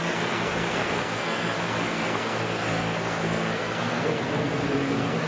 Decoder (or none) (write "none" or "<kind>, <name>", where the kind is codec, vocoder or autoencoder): codec, SNAC